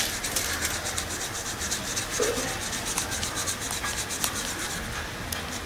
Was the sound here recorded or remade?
recorded